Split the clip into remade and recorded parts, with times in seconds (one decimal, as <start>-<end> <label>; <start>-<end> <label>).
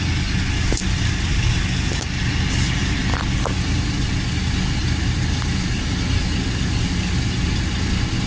0.0-8.3 recorded